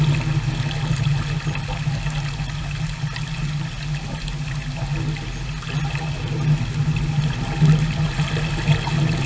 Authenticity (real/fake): real